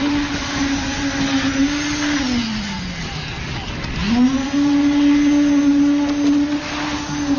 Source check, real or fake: real